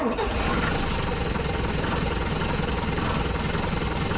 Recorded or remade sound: recorded